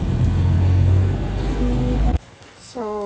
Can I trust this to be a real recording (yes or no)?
no